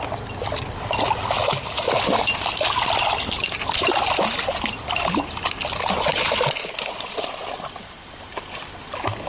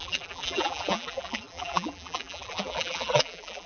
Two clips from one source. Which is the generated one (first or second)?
second